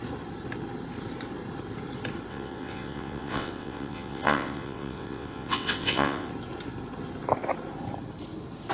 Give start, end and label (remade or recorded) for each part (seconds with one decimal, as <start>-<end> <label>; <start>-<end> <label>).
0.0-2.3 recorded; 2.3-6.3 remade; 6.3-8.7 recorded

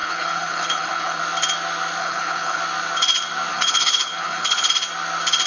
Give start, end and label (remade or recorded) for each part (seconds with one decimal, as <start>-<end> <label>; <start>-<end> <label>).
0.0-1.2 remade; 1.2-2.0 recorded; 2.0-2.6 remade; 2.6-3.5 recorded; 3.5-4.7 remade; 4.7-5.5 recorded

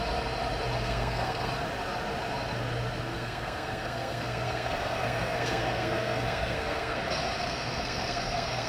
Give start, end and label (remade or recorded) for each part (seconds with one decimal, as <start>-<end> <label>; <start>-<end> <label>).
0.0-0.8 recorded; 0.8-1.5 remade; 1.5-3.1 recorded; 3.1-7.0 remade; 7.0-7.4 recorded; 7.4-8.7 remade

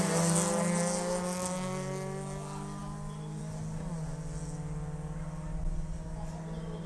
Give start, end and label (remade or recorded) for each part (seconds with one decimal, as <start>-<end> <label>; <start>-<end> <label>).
0.0-6.9 recorded